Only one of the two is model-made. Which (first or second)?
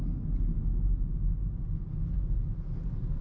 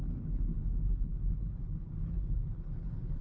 second